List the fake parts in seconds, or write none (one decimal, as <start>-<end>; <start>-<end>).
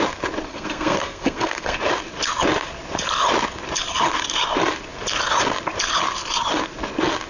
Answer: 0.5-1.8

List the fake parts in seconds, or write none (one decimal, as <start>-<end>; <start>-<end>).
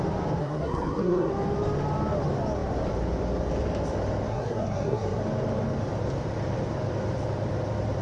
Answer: 0.4-1.3; 4.3-5.2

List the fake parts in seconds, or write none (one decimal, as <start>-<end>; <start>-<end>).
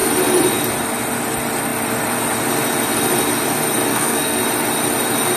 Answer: 3.9-4.4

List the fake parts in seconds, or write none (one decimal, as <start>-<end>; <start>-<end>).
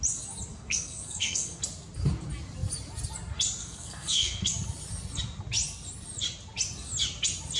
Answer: 0.5-1.6; 3.6-4.5